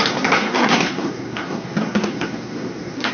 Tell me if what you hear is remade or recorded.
remade